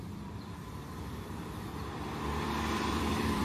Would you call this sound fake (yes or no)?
yes